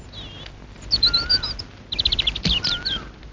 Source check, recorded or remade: recorded